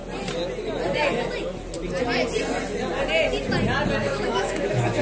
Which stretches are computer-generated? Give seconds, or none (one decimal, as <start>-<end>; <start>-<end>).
4.0-5.0